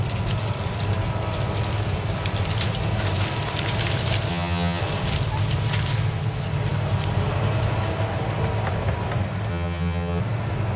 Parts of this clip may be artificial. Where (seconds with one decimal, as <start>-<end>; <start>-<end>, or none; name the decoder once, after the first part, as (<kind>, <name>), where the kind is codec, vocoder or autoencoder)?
4.3-4.8 (vocoder, HiFi-GAN); 9.5-10.2